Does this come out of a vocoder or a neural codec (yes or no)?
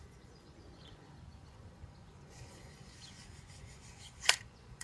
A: yes